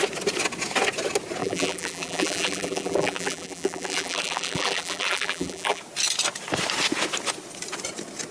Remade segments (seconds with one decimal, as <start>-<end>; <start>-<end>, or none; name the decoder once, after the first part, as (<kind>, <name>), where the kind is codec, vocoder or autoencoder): 1.4-5.8 (vocoder, BigVGAN v2)